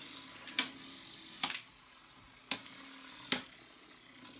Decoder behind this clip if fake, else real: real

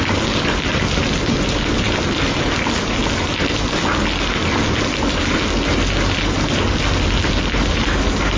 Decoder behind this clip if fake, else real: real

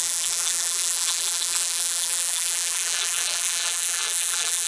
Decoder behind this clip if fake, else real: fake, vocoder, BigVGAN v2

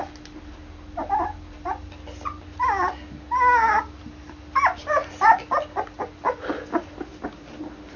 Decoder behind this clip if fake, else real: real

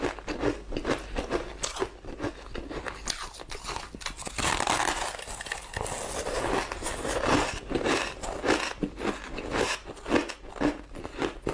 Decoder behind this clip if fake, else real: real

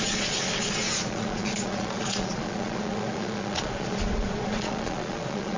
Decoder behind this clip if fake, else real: fake, vocoder, Vocos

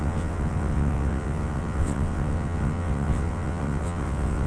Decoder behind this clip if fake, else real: fake, vocoder, WaveNeXt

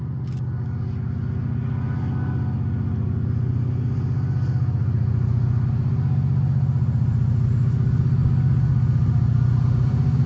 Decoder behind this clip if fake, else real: real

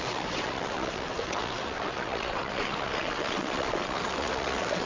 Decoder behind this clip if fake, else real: fake, vocoder, WaveNeXt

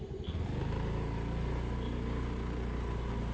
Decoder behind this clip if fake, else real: real